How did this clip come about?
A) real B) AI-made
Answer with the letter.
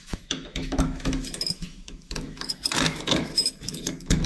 B